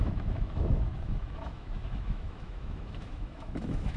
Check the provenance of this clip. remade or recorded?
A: remade